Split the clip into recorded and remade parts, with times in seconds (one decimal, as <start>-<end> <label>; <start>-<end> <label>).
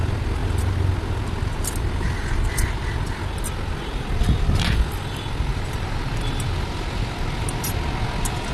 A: 0.0-5.5 recorded; 5.5-6.1 remade; 6.1-8.5 recorded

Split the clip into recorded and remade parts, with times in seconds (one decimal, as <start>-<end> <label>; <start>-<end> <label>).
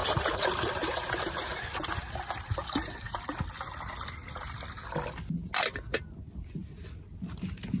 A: 0.0-3.4 remade; 3.4-7.8 recorded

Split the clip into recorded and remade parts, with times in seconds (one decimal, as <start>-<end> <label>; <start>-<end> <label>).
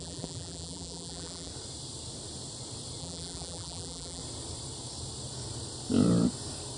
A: 0.0-1.5 remade; 1.5-3.0 recorded; 3.0-4.2 remade; 4.2-6.8 recorded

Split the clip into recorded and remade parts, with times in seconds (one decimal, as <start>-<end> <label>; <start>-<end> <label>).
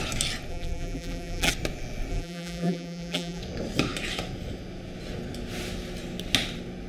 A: 0.0-0.5 recorded; 0.5-1.5 remade; 1.5-2.1 recorded; 2.1-3.4 remade; 3.4-6.9 recorded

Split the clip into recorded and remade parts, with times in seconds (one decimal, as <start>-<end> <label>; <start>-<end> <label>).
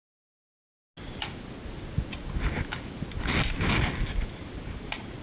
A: 0.0-0.6 remade; 0.6-3.2 recorded; 3.2-5.2 remade